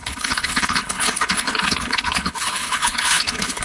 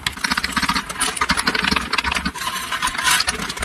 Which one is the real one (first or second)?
second